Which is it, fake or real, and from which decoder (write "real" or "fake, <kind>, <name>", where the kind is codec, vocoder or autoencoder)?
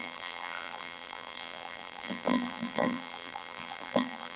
fake, vocoder, BigVGAN v2